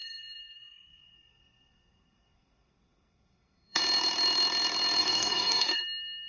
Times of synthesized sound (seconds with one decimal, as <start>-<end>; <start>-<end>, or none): 0.0-3.8; 5.0-5.8